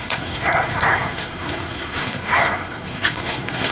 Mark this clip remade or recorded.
remade